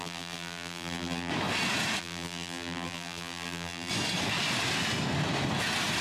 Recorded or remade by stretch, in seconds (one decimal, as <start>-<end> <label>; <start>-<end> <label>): 0.0-1.3 remade; 1.3-2.0 recorded; 2.0-3.9 remade; 3.9-6.0 recorded